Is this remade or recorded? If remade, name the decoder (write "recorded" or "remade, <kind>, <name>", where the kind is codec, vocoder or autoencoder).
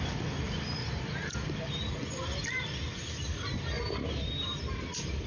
recorded